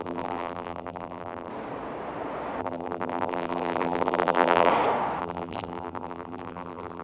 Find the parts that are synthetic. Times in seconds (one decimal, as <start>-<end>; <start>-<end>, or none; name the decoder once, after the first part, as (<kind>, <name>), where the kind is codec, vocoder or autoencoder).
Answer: 0.0-1.5 (vocoder, BigVGAN v2); 2.6-4.7; 5.2-7.0